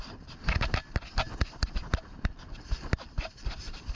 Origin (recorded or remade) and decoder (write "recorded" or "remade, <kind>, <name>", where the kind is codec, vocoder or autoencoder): recorded